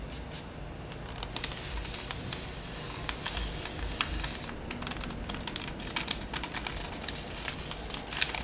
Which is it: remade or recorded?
recorded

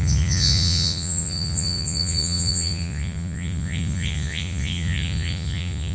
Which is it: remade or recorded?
remade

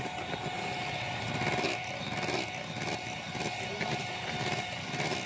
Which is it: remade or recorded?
recorded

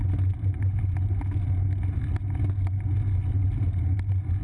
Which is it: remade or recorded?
recorded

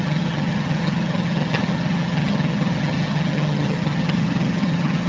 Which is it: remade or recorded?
remade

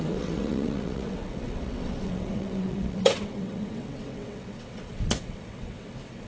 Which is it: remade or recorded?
remade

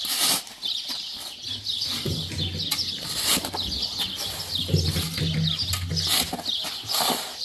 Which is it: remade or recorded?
recorded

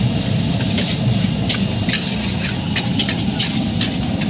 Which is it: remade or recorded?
recorded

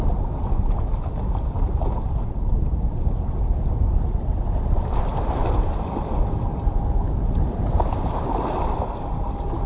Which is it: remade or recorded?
recorded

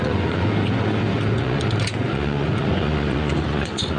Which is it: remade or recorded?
remade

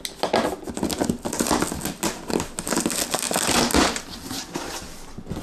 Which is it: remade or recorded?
recorded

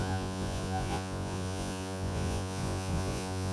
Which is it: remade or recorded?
remade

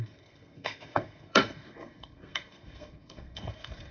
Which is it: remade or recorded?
remade